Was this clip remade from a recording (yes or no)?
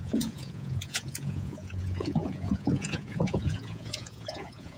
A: yes